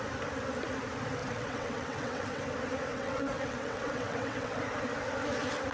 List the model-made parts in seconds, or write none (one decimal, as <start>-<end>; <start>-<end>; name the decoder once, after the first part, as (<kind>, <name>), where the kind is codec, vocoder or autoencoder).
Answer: 1.2-2.4 (vocoder, WaveNeXt); 2.9-4.6